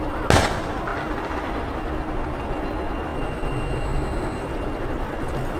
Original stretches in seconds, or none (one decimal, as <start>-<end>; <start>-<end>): 0.0-5.6